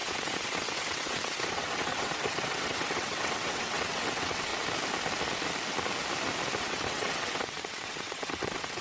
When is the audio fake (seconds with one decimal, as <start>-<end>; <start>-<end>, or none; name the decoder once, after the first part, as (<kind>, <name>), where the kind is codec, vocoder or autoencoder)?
0.0-4.5 (vocoder, WaveNeXt); 6.6-8.8